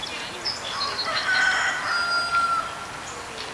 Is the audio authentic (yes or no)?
yes